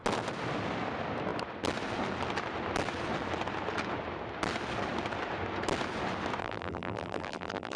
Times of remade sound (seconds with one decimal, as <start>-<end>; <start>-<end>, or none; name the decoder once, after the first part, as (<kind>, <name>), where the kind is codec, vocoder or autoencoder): 6.4-7.8 (vocoder, BigVGAN v2)